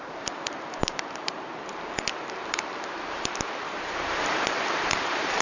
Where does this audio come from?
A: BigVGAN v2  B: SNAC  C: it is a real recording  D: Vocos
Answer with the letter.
A